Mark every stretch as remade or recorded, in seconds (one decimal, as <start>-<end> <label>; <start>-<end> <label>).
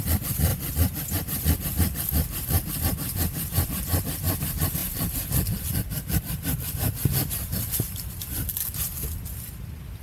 0.0-10.0 recorded